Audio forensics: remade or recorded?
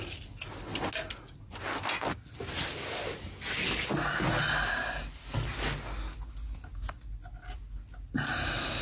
recorded